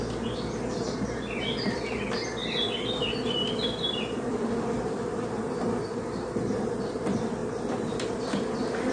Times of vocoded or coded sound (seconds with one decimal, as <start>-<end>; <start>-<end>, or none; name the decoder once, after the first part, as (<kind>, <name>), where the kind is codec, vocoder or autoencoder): 2.4-6.9 (vocoder, BigVGAN v2); 7.4-8.9